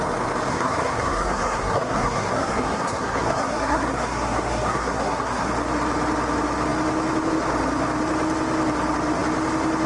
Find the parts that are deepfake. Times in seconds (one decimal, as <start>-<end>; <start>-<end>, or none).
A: 0.5-5.5